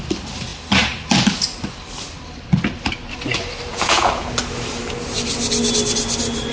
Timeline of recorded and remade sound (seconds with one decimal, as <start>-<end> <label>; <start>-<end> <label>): 0.0-3.7 recorded; 3.7-4.3 remade; 4.3-6.5 recorded